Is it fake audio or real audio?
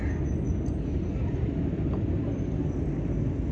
real